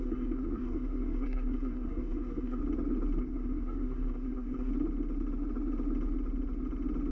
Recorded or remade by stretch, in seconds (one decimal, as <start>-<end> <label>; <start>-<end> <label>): 0.0-2.6 remade; 2.6-3.2 recorded; 3.2-4.7 remade; 4.7-7.1 recorded